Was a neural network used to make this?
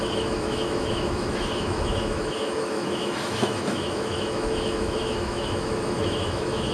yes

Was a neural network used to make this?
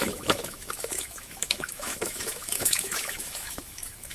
yes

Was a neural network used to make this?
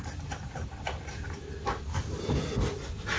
no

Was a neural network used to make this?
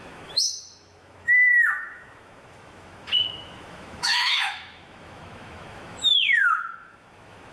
yes